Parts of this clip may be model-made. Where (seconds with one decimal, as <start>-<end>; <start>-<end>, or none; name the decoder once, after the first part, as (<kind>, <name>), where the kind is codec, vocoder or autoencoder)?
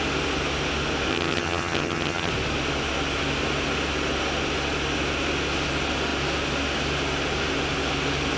1.1-2.3 (vocoder, HiFi-GAN)